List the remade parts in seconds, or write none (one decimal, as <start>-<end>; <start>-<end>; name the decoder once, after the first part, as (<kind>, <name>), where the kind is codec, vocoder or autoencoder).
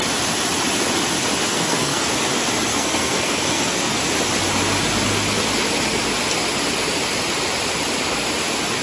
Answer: 1.5-2.1 (codec, SNAC); 2.7-4.0